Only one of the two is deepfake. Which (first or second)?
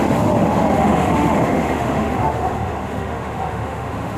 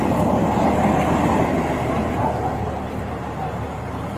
first